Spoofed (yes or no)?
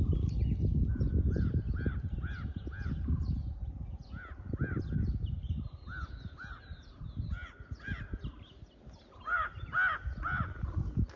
no